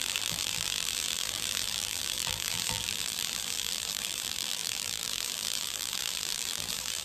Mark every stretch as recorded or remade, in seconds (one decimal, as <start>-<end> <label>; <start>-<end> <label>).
0.0-7.0 remade